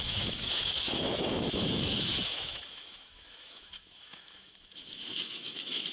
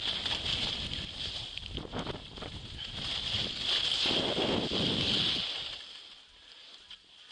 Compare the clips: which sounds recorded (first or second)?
second